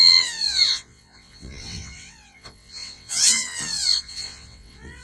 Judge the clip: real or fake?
fake